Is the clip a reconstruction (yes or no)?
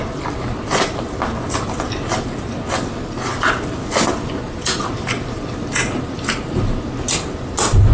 no